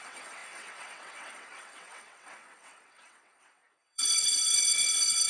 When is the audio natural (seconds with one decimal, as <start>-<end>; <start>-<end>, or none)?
none